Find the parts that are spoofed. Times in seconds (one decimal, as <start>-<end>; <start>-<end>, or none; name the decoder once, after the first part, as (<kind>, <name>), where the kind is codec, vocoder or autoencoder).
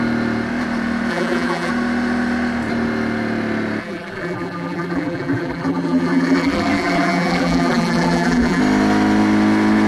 1.1-1.7 (vocoder, BigVGAN v2); 3.8-8.6